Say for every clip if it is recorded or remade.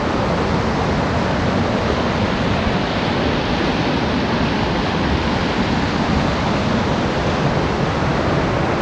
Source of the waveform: recorded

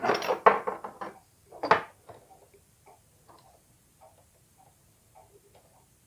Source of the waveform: recorded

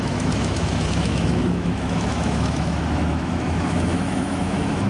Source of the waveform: remade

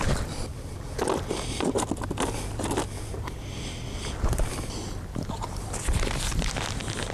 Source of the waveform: recorded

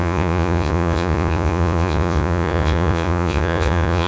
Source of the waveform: remade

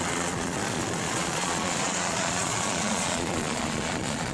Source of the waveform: remade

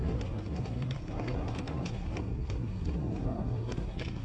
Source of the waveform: remade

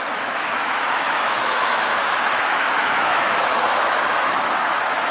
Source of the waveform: remade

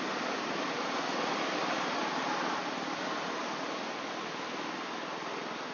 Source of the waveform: recorded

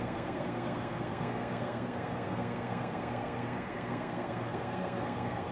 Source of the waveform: remade